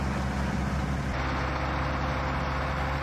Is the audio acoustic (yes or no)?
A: yes